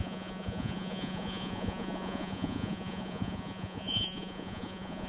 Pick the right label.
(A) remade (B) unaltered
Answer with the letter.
A